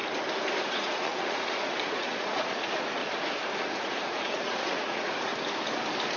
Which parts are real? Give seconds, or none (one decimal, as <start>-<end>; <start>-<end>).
0.0-0.7; 3.0-3.6; 5.3-6.2